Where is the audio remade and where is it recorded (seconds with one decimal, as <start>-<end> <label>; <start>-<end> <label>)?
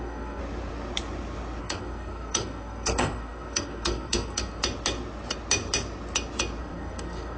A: 0.0-0.4 remade; 0.4-1.6 recorded; 1.6-4.6 remade; 4.6-6.6 recorded; 6.6-7.4 remade